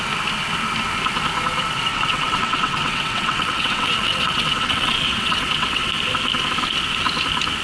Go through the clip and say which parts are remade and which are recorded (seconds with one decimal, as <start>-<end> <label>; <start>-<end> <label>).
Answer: 0.0-1.9 recorded; 1.9-5.9 remade; 5.9-7.6 recorded